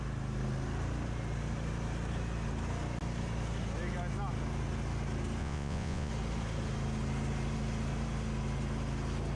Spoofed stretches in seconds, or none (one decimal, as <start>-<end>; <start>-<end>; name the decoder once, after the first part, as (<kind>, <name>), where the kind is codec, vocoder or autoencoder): 5.4-6.1 (vocoder, Vocos)